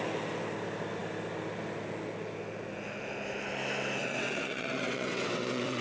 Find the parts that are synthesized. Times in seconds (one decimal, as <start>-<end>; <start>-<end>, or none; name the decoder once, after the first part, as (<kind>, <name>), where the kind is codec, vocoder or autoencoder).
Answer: 4.0-5.8 (vocoder, WaveNeXt)